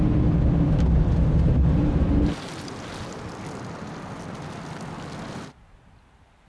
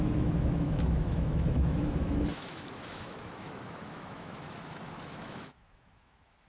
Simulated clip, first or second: second